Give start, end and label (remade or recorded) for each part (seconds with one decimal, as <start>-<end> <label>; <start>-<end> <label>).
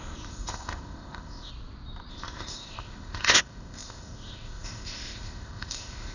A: 0.0-1.5 remade; 1.5-2.1 recorded; 2.1-6.1 remade